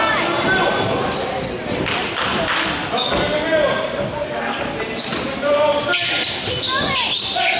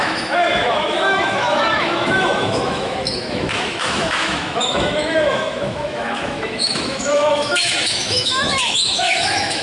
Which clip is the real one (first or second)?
first